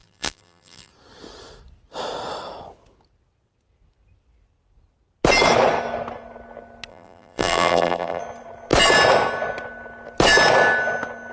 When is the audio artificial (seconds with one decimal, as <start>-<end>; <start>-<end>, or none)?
0.0-0.9; 6.9-8.2